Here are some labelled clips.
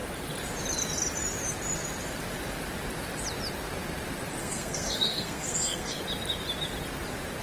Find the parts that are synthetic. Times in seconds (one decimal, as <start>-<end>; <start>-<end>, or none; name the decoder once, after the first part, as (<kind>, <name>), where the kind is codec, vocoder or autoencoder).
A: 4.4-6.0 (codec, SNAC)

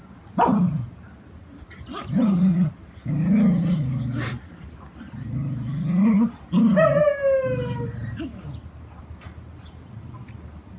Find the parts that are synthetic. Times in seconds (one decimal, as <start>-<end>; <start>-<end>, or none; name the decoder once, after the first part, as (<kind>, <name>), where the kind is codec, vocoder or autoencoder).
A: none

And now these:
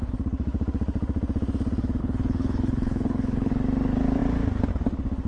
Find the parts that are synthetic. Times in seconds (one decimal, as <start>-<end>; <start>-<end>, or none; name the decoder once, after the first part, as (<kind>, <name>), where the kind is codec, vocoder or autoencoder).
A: 2.0-3.5 (codec, HILCodec)